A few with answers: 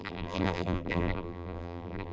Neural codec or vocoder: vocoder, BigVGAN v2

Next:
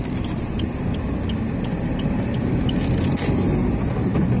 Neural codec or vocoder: none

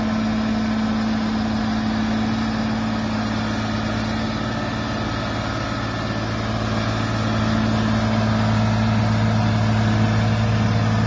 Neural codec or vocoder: none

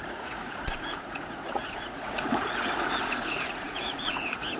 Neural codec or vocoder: vocoder, Vocos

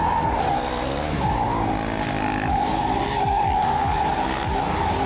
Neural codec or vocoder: none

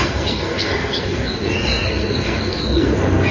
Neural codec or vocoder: codec, SNAC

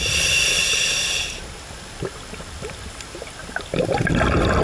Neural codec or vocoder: none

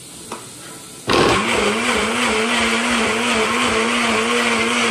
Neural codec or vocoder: none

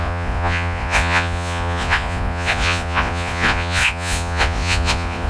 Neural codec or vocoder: vocoder, Vocos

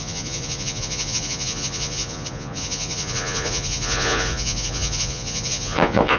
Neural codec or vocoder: vocoder, Vocos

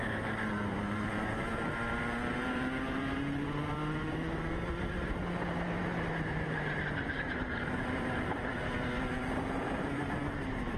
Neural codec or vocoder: vocoder, BigVGAN v2